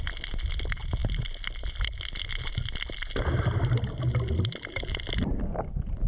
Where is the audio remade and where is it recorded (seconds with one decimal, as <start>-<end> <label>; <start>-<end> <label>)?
0.0-6.1 recorded